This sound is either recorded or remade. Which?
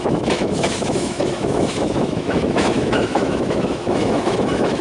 remade